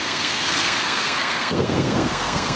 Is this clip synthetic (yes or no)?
yes